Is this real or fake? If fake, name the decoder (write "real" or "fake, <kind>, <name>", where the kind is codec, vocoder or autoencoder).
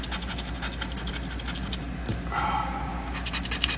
real